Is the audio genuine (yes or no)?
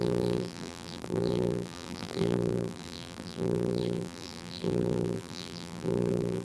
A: no